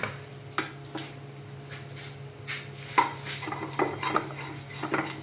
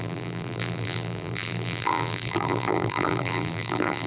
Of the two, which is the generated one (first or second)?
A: second